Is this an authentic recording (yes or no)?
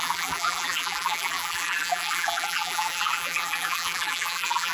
no